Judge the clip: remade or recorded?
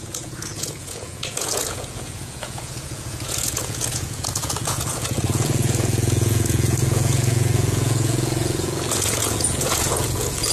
remade